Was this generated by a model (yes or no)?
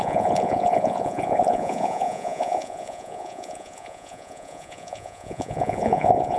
yes